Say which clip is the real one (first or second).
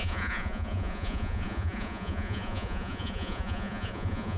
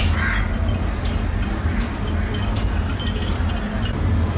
second